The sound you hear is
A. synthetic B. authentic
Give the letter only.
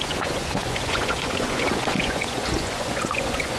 A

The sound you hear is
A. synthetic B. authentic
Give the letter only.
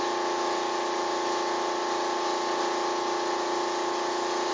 B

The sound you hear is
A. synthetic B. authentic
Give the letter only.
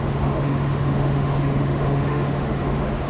A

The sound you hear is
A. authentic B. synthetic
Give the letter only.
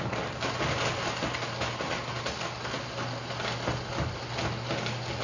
A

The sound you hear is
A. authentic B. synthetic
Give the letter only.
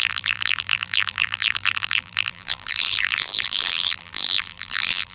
B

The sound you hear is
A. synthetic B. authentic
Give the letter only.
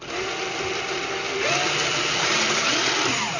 B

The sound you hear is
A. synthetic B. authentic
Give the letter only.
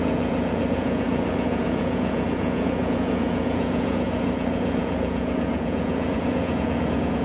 A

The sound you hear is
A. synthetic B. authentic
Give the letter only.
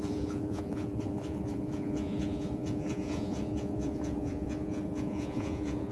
A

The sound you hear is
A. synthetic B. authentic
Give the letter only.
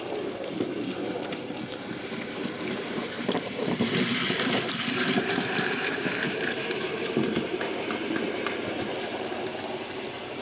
A